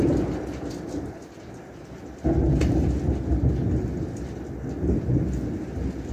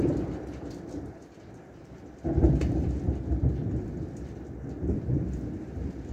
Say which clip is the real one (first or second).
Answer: first